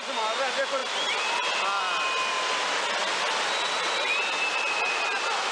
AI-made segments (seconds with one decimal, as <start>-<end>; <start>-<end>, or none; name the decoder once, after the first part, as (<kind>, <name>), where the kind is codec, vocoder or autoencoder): none